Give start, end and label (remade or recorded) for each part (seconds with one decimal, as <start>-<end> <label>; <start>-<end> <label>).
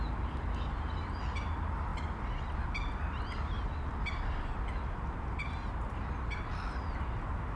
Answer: 0.0-7.6 recorded